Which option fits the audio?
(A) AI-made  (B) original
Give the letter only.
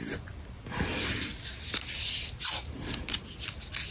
B